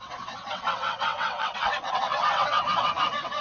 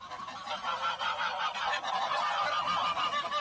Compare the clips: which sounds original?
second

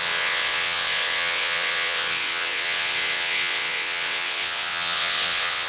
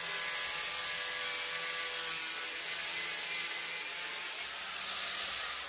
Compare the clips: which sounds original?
second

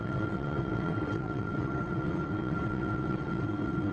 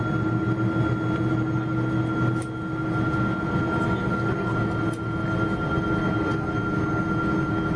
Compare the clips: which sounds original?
second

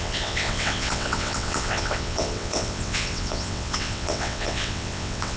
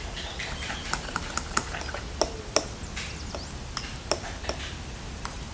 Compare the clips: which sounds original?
second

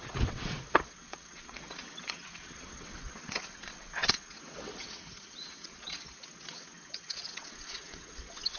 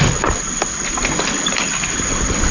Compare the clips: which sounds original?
second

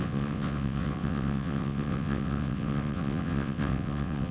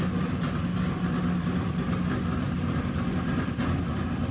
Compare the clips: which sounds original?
second